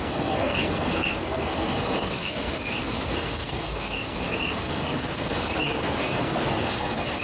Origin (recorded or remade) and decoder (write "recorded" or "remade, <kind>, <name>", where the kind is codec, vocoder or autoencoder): remade, codec, SNAC